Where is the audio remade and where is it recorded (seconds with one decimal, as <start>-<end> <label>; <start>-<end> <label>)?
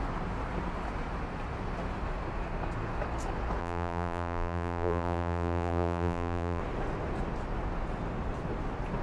0.0-3.6 recorded; 3.6-6.6 remade; 6.6-9.0 recorded